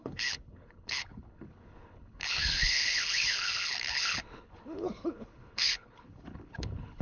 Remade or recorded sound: remade